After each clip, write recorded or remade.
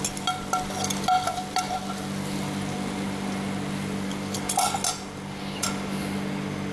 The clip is recorded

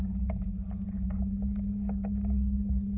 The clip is recorded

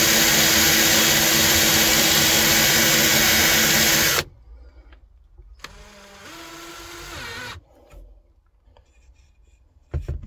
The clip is recorded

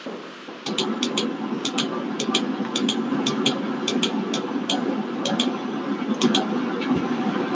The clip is recorded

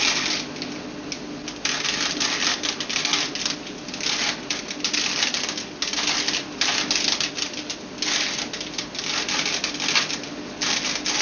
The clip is recorded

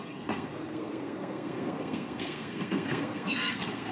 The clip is remade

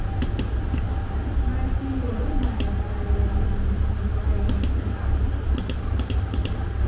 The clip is recorded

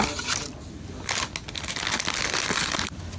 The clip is recorded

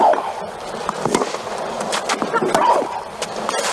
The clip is recorded